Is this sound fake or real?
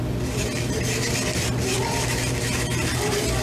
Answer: real